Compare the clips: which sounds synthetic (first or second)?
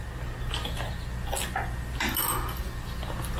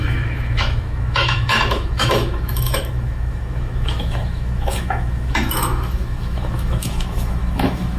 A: second